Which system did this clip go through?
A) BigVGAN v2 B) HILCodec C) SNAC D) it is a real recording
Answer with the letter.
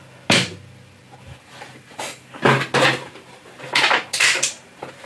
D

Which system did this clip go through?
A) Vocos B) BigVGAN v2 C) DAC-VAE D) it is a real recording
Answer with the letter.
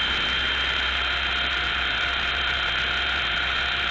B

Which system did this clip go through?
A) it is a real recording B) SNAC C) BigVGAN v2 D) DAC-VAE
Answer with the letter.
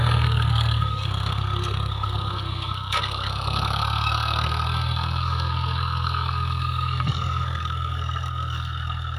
B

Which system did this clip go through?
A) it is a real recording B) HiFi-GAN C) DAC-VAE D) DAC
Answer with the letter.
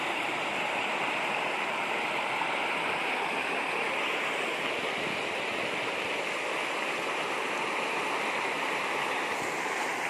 A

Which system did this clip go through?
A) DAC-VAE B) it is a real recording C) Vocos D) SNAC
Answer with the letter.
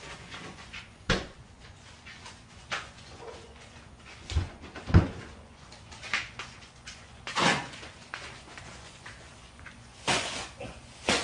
C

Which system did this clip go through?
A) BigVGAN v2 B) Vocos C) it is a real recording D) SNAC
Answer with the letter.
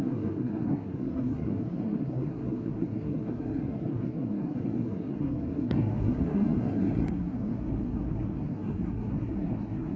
D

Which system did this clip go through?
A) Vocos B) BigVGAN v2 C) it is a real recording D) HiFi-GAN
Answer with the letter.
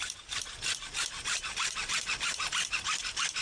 B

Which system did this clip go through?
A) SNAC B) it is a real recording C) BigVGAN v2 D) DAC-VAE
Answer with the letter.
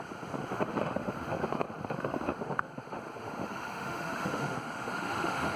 D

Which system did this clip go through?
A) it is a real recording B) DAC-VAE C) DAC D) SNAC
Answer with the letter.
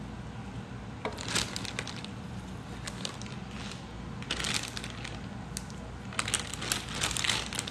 A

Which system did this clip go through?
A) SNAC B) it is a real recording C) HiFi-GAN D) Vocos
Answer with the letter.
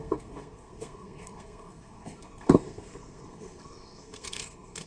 A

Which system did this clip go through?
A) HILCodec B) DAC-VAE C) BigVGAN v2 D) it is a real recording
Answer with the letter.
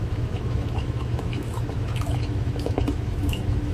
B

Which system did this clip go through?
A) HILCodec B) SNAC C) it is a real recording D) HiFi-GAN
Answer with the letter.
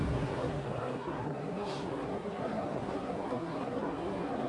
B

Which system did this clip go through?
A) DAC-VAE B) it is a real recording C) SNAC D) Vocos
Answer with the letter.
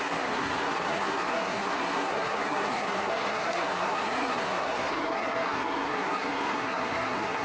C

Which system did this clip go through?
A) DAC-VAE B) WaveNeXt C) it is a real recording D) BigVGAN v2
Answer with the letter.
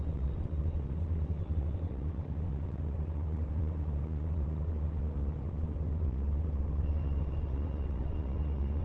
B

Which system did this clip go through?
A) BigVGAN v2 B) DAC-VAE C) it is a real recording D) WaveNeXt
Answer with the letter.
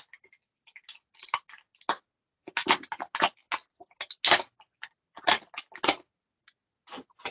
C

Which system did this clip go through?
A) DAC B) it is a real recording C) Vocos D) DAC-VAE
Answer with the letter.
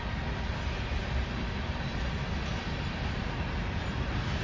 B